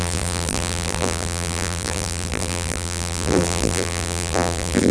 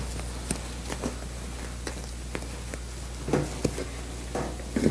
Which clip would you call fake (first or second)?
first